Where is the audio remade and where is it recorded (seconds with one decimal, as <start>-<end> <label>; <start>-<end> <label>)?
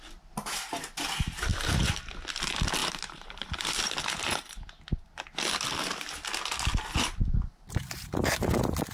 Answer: 0.0-1.5 recorded; 1.5-2.1 remade; 2.1-2.8 recorded; 2.8-3.9 remade; 3.9-8.9 recorded